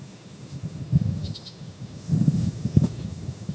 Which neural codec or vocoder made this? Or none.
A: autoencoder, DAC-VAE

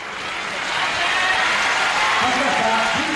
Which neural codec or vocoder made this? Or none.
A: none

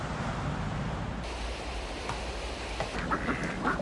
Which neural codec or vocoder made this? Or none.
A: none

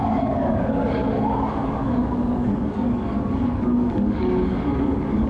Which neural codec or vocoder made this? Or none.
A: codec, DAC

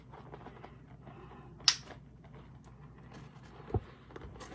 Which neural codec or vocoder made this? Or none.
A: none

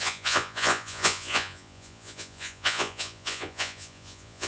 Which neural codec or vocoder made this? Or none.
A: vocoder, Vocos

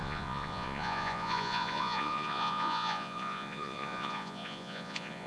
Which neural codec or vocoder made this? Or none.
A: vocoder, Vocos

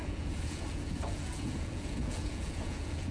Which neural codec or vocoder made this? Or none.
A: vocoder, Vocos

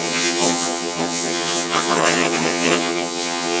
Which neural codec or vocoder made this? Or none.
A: vocoder, HiFi-GAN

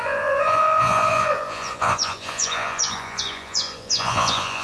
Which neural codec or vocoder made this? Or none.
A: vocoder, Vocos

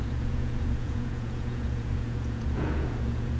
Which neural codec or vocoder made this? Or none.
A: vocoder, Vocos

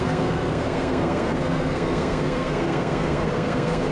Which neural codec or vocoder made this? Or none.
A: codec, SNAC